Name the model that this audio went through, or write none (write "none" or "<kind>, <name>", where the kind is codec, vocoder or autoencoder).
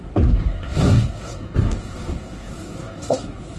codec, SNAC